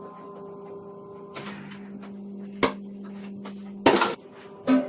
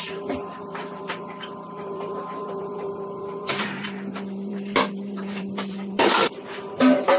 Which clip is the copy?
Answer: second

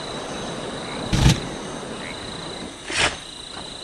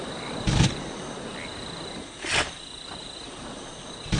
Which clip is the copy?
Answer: second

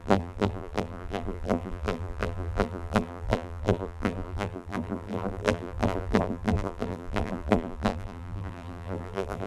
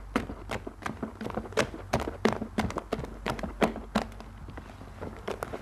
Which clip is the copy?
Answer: first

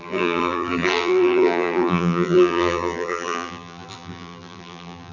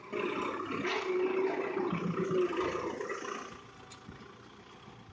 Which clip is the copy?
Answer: first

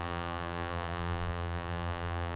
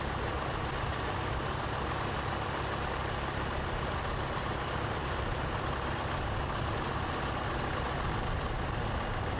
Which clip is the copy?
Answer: first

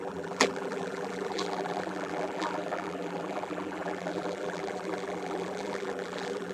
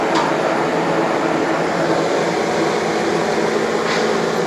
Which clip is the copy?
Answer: first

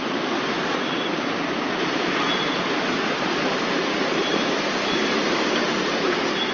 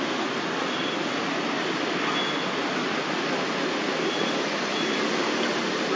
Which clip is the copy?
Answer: first